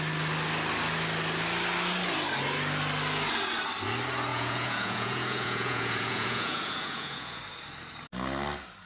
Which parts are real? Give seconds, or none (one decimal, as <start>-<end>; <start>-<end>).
0.0-4.3; 7.4-8.9